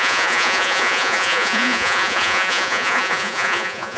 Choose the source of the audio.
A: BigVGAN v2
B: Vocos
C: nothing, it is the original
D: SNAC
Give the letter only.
B